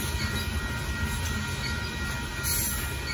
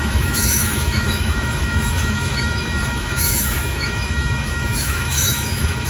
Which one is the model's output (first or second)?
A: second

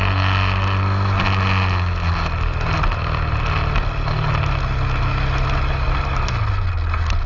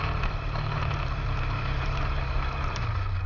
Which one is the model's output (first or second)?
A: second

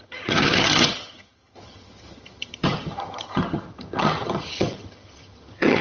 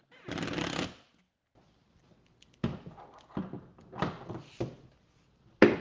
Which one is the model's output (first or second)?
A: first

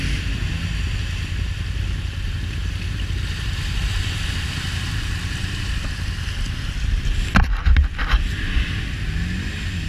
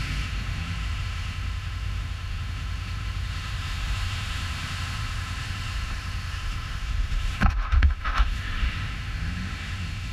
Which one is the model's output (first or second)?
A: second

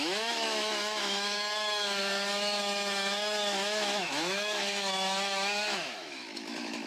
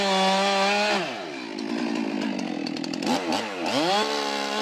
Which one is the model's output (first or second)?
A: first